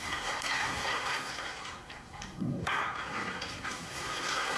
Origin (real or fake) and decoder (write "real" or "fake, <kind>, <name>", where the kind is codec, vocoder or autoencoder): fake, codec, SNAC